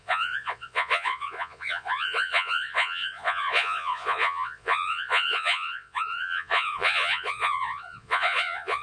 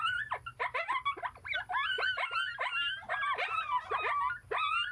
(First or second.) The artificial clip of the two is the first